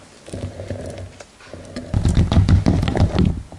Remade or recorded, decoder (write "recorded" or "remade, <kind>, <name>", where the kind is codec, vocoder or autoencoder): recorded